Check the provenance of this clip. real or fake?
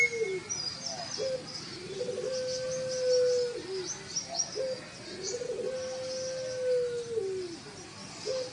real